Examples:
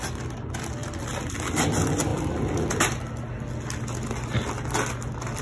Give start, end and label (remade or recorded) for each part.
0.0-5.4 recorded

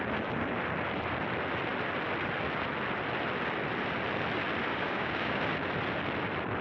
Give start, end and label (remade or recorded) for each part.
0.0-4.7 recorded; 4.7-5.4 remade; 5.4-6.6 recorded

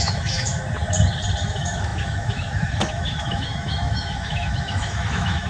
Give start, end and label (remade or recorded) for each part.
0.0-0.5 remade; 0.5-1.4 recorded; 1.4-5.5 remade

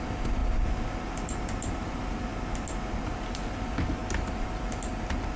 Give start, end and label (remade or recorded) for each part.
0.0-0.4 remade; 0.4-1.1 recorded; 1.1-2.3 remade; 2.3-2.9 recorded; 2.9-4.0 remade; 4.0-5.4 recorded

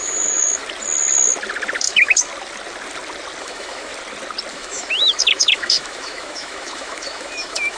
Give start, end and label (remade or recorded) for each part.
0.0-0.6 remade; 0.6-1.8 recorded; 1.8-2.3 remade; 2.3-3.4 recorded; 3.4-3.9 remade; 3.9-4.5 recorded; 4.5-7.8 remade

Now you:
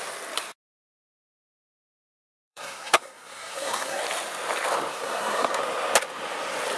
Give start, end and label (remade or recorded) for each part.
0.0-0.7 recorded; 0.7-4.0 remade; 4.0-4.9 recorded; 4.9-5.6 remade; 5.6-6.8 recorded